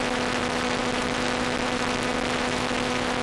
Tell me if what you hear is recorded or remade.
recorded